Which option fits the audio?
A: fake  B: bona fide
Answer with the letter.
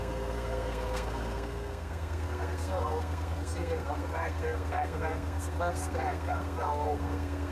A